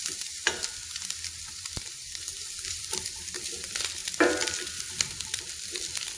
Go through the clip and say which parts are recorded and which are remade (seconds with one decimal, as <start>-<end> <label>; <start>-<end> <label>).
0.0-0.8 remade; 0.8-1.4 recorded; 1.4-6.2 remade